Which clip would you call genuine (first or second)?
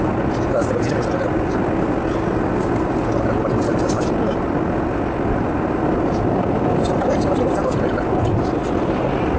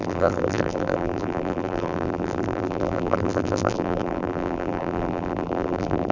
first